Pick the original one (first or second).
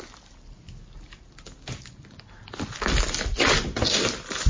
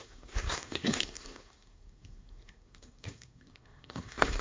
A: first